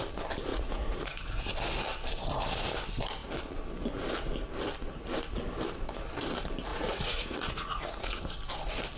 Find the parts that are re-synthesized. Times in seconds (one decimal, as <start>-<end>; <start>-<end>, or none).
0.5-1.4; 6.7-8.2